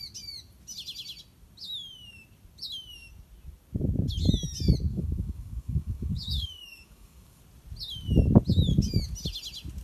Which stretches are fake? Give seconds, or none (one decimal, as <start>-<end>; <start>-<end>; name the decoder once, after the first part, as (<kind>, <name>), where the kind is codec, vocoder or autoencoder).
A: 4.9-7.4 (codec, DAC)